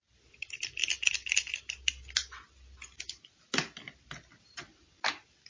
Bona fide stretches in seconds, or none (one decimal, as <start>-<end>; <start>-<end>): 0.0-5.5